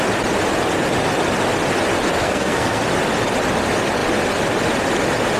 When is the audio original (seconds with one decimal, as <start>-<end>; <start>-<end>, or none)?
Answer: 0.0-2.2; 2.8-5.4